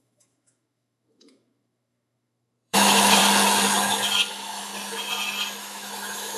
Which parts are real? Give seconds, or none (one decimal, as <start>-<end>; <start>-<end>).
3.2-4.3; 4.7-5.6